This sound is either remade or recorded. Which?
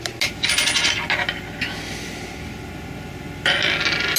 recorded